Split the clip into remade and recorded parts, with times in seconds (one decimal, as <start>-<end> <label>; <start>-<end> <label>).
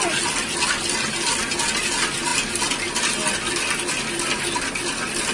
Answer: 0.0-5.3 recorded